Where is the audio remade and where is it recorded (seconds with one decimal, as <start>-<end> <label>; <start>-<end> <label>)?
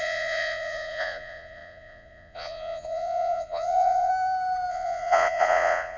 0.0-4.1 remade; 4.1-4.7 recorded; 4.7-6.0 remade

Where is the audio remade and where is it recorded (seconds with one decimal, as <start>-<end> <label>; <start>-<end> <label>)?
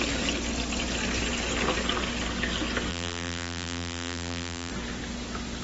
0.0-2.9 recorded; 2.9-4.7 remade; 4.7-5.6 recorded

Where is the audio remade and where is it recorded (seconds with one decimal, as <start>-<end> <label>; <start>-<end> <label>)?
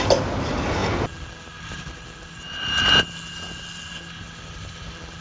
0.0-5.2 recorded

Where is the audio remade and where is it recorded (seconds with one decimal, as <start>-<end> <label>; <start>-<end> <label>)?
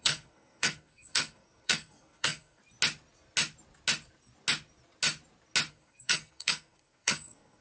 0.0-2.6 remade; 2.6-5.7 recorded; 5.7-7.6 remade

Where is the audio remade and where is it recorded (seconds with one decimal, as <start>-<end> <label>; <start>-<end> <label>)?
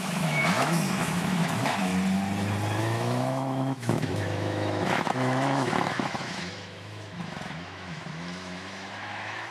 0.0-1.9 remade; 1.9-2.8 recorded; 2.8-9.5 remade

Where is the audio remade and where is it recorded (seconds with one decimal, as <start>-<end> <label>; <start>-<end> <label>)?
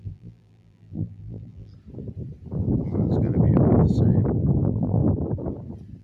0.0-1.7 remade; 1.7-4.6 recorded; 4.6-5.0 remade; 5.0-6.0 recorded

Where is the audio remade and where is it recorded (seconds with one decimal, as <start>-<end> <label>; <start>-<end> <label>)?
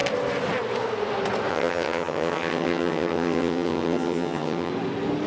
0.0-1.5 recorded; 1.5-4.7 remade; 4.7-5.3 recorded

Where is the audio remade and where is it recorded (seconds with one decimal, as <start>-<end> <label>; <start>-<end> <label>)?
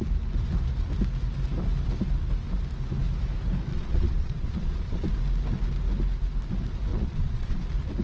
0.0-3.7 recorded; 3.7-5.1 remade; 5.1-6.9 recorded; 6.9-7.6 remade; 7.6-8.0 recorded